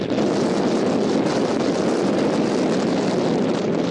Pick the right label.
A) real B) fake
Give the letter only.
A